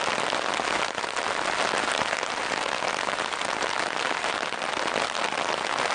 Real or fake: real